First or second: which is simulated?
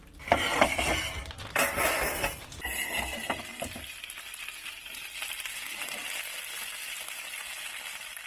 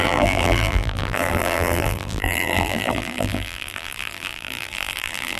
second